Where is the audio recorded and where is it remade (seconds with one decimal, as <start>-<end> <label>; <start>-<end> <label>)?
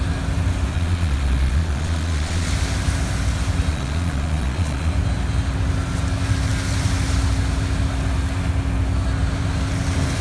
0.0-0.7 recorded; 0.7-2.5 remade; 2.5-3.7 recorded; 3.7-4.9 remade; 4.9-10.2 recorded